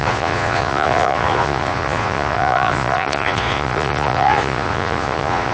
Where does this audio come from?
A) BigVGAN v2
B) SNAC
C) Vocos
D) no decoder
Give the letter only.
C